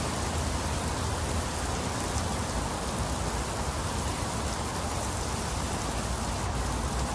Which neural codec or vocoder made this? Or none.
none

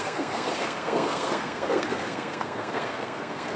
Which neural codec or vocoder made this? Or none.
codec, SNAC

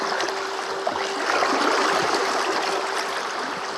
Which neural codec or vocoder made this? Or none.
none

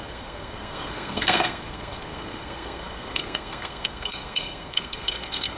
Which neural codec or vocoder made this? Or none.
codec, SNAC